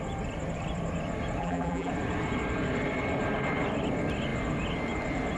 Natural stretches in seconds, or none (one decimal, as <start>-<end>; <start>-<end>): 0.0-1.4; 1.9-5.4